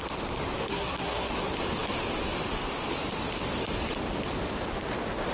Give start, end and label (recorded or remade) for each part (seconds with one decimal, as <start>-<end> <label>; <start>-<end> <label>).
0.0-0.6 recorded; 0.6-1.3 remade; 1.3-5.3 recorded